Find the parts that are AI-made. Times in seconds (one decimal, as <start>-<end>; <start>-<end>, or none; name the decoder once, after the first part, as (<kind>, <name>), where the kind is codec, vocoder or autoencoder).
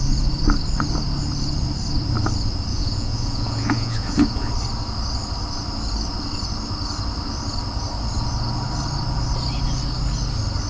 2.7-4.5 (vocoder, Vocos)